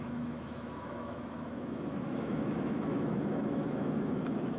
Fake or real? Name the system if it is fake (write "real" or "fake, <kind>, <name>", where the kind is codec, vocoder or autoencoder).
fake, autoencoder, DAC-VAE